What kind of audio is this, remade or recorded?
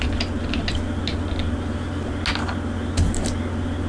recorded